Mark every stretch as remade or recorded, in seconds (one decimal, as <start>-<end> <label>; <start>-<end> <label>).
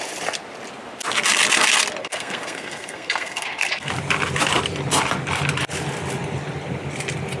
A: 0.0-2.0 recorded; 2.0-3.9 remade; 3.9-7.4 recorded